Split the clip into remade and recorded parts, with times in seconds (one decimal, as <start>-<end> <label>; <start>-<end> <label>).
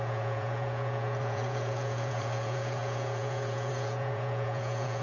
0.0-5.0 remade